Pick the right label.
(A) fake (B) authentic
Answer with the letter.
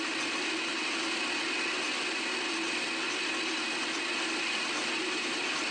B